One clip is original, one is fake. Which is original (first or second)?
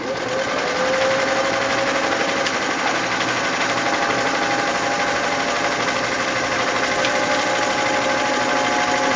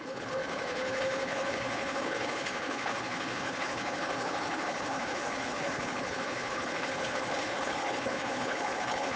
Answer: first